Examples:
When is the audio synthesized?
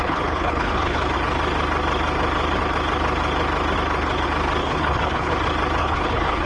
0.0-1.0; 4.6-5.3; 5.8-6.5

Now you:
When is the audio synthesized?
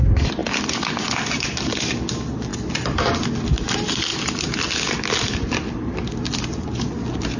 none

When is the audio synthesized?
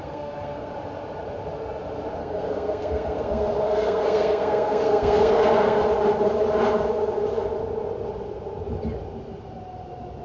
0.0-0.7; 2.2-5.8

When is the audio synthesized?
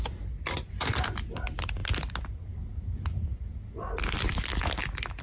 none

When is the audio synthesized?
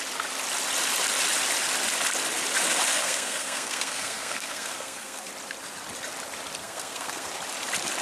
2.9-5.3; 6.6-7.3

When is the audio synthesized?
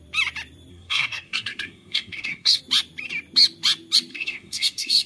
0.7-2.6; 4.1-5.1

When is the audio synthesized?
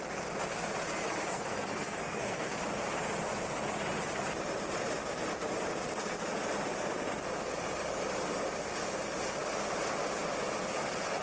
1.3-2.5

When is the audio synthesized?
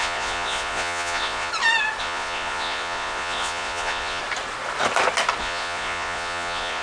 0.0-1.5; 2.0-4.2; 5.4-6.8